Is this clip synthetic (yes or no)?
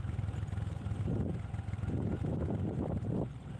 no